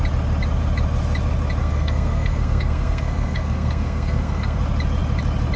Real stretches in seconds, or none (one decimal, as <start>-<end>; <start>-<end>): 0.0-1.6; 4.6-5.6